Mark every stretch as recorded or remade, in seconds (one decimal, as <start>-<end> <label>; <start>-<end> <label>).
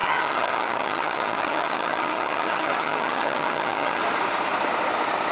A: 0.0-4.0 remade; 4.0-5.3 recorded